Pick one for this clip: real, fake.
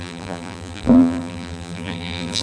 fake